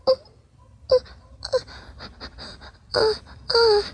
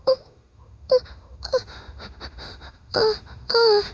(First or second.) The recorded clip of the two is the first